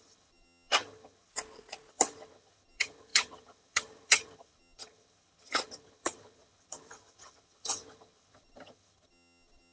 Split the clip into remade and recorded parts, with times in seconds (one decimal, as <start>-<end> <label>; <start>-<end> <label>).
0.0-1.3 remade; 1.3-1.9 recorded; 1.9-9.7 remade